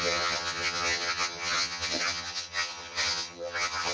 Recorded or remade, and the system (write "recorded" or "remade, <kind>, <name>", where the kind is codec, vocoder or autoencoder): remade, vocoder, HiFi-GAN